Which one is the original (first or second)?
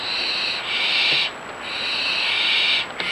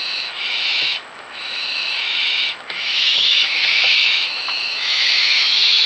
first